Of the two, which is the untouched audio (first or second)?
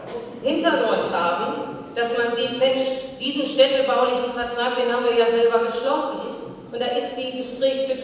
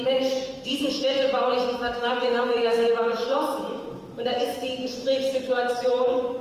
first